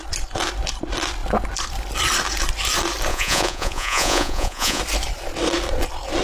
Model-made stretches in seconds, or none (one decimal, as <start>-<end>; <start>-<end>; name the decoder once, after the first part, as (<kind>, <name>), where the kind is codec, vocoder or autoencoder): 3.1-4.8 (vocoder, Vocos)